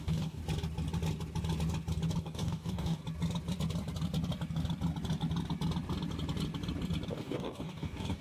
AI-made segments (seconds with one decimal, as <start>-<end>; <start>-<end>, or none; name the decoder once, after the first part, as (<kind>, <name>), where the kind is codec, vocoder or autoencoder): 0.0-0.4 (codec, DAC); 2.2-3.0; 7.1-8.2